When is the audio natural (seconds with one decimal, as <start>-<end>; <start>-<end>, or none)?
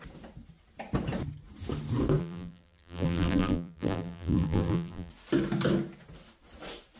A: 0.0-2.2; 5.1-7.0